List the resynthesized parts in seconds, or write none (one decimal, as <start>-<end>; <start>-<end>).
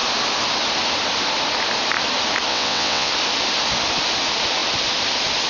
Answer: 2.5-3.1